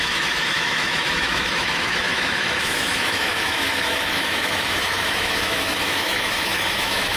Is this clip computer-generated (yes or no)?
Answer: yes